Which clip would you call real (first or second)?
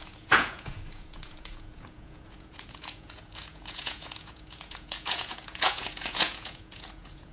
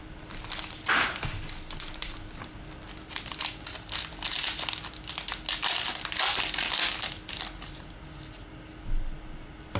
second